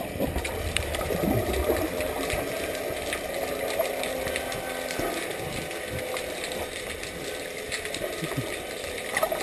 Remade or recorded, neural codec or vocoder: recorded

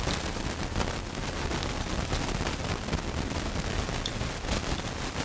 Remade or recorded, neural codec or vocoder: recorded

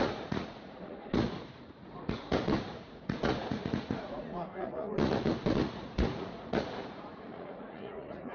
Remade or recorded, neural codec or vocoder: remade, vocoder, Vocos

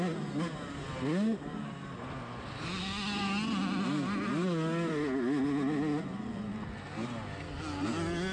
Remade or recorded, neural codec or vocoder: recorded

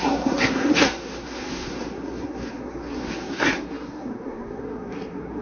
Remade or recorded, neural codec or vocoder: remade, codec, SNAC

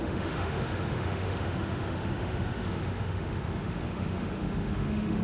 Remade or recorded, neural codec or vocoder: remade, autoencoder, DAC-VAE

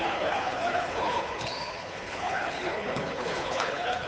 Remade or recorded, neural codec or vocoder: remade, codec, HILCodec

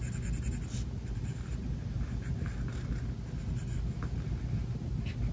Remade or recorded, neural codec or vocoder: recorded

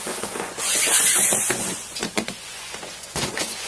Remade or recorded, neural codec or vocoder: remade, vocoder, Vocos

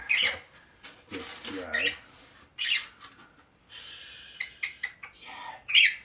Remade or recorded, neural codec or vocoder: recorded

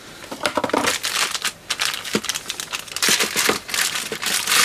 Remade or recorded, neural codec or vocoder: recorded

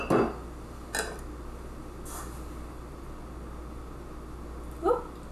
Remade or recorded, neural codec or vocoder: recorded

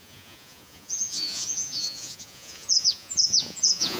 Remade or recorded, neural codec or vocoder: remade, vocoder, Vocos